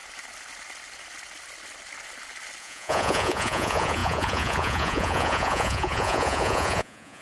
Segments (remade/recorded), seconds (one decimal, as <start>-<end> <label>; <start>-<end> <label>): 0.0-2.6 recorded; 2.6-7.2 remade

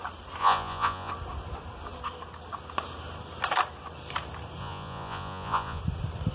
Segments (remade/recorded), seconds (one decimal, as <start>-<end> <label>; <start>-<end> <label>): 0.0-0.4 recorded; 0.4-1.1 remade; 1.1-4.6 recorded; 4.6-5.8 remade; 5.8-6.3 recorded

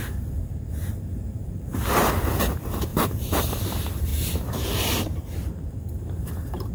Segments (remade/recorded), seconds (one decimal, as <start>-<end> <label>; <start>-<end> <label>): 0.0-1.1 recorded; 1.1-1.9 remade; 1.9-2.9 recorded; 2.9-3.6 remade; 3.6-4.1 recorded; 4.1-6.7 remade

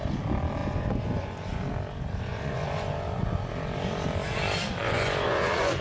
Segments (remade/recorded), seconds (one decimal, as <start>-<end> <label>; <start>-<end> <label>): 0.0-0.6 recorded; 0.6-1.6 remade; 1.6-2.3 recorded; 2.3-3.5 remade; 3.5-4.8 recorded; 4.8-5.8 remade

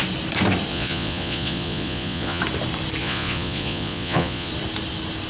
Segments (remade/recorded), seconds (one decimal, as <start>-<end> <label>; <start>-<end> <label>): 0.0-0.7 recorded; 0.7-2.4 remade; 2.4-3.0 recorded; 3.0-4.5 remade; 4.5-5.3 recorded

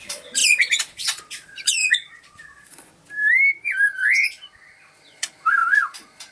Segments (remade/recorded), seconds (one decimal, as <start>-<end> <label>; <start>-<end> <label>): 0.0-2.9 remade; 2.9-5.0 recorded; 5.0-6.3 remade

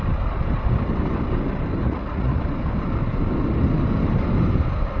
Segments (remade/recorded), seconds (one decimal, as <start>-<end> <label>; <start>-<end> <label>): 0.0-1.8 recorded; 1.8-2.4 remade; 2.4-5.0 recorded

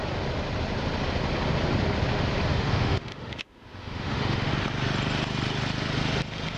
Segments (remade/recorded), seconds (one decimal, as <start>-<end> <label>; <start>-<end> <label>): 0.0-2.5 recorded; 2.5-4.5 remade; 4.5-6.6 recorded